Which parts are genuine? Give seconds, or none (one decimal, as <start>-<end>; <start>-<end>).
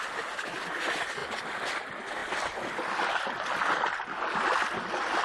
0.0-5.2